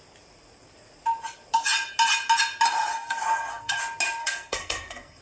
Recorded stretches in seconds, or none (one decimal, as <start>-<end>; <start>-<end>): 0.0-2.9; 3.8-4.2